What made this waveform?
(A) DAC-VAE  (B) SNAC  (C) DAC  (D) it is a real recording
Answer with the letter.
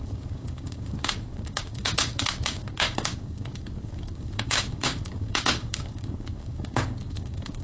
C